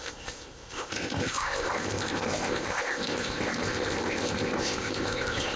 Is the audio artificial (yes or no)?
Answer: yes